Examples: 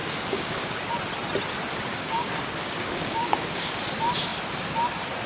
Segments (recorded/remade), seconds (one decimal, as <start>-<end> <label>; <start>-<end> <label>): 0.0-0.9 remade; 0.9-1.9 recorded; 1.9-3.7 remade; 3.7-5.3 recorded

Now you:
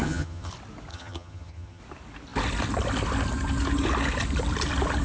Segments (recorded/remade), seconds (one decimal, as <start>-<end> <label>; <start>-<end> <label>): 0.0-0.5 remade; 0.5-0.9 recorded; 0.9-1.8 remade; 1.8-5.0 recorded

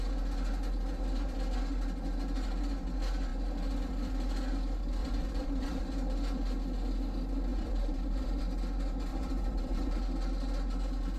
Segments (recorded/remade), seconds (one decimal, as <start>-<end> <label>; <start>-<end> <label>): 0.0-5.0 recorded; 5.0-5.8 remade; 5.8-7.5 recorded; 7.5-8.4 remade; 8.4-9.1 recorded; 9.1-10.0 remade; 10.0-11.2 recorded

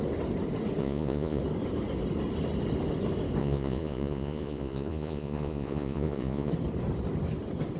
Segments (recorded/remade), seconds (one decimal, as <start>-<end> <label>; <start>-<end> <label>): 0.0-0.8 recorded; 0.8-1.4 remade; 1.4-3.4 recorded; 3.4-6.5 remade; 6.5-7.8 recorded

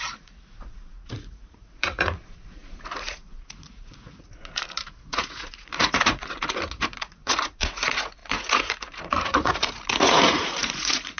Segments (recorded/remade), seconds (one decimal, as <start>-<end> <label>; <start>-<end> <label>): 0.0-11.2 remade

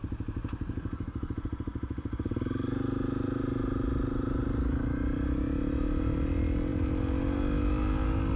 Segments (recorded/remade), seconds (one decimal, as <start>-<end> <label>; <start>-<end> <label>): 0.0-8.4 recorded

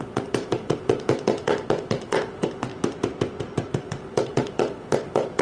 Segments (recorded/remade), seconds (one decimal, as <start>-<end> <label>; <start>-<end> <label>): 0.0-2.7 remade; 2.7-3.7 recorded; 3.7-5.4 remade